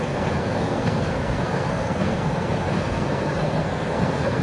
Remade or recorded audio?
remade